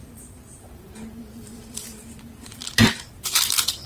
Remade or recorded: remade